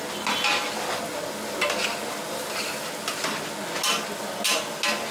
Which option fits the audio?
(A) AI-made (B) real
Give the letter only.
B